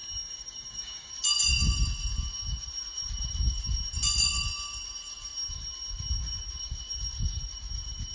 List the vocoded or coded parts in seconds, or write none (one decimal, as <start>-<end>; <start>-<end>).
0.0-1.1